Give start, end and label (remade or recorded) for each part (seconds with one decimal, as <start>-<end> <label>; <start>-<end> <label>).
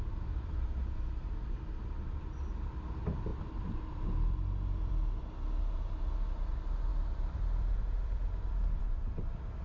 0.0-3.3 recorded; 3.3-4.9 remade; 4.9-6.9 recorded; 6.9-8.8 remade; 8.8-9.6 recorded